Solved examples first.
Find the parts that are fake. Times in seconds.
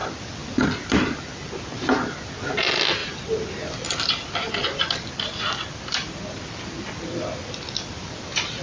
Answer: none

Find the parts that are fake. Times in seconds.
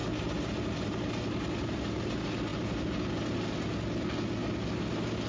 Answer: none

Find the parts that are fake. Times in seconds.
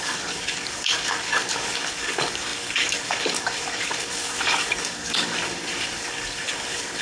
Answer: 0.0-7.0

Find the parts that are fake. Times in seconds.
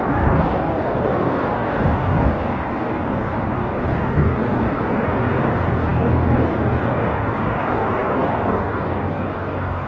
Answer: 0.0-9.9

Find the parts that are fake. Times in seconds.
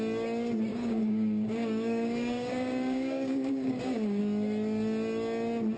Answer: 0.7-4.2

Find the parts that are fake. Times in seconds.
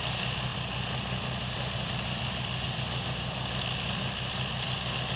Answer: none